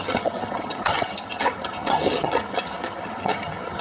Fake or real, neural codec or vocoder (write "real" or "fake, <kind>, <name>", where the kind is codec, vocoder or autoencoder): fake, vocoder, HiFi-GAN